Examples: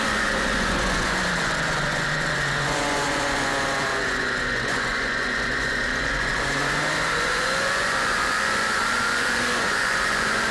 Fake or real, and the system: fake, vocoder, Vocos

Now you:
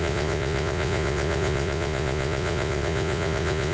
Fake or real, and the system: fake, vocoder, Vocos